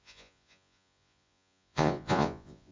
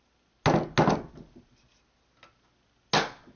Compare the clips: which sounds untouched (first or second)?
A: second